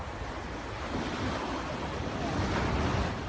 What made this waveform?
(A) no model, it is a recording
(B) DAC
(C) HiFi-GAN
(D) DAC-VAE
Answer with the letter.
A